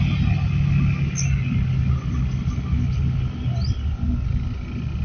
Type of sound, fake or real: real